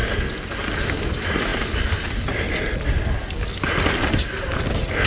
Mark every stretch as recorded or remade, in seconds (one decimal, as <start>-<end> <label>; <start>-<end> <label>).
0.0-5.1 recorded